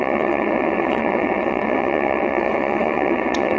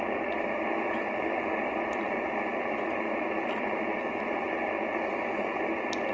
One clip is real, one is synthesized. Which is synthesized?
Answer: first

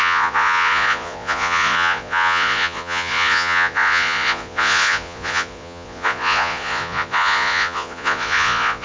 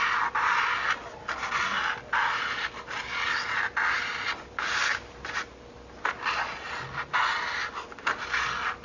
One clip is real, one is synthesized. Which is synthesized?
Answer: first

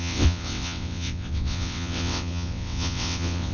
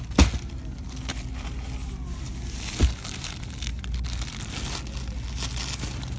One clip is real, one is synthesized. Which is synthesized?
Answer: first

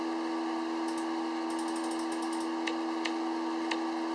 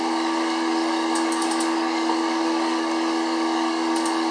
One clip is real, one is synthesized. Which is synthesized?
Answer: second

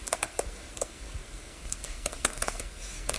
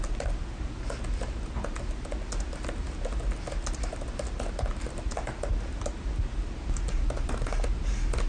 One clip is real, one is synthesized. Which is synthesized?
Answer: first